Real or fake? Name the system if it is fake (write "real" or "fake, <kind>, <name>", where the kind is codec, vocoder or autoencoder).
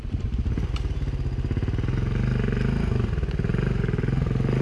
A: real